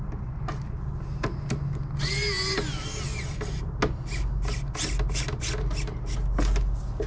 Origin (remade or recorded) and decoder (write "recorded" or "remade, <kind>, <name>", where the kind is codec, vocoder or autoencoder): recorded